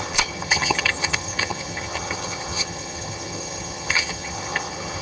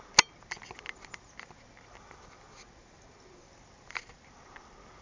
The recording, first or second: second